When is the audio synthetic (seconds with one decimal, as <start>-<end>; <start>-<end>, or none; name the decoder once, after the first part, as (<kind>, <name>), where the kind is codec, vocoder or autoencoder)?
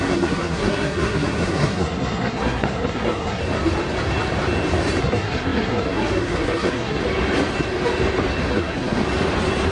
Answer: 0.0-3.4 (codec, SNAC); 5.0-7.0; 8.4-9.0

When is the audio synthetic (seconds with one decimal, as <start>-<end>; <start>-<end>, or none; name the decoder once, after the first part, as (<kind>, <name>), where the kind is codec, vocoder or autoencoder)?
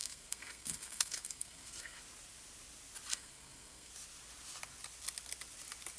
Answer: 0.0-2.0 (codec, SNAC); 3.1-3.9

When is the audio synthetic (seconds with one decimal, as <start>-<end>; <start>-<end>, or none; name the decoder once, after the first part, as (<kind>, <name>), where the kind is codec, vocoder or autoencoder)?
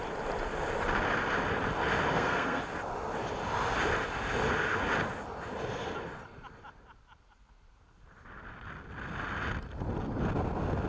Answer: 2.1-2.6 (codec, SNAC)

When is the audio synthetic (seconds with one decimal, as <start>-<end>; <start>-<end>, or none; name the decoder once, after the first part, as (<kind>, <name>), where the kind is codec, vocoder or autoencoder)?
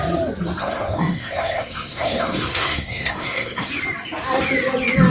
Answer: 0.6-3.7 (codec, SNAC)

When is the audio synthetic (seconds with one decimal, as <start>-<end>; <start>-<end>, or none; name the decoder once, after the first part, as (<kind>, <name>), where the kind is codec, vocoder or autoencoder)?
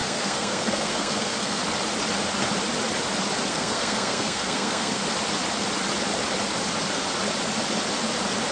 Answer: 0.0-1.6 (codec, SNAC); 3.5-5.0